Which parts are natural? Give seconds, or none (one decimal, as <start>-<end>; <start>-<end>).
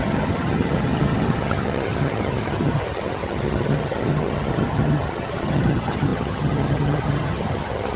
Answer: none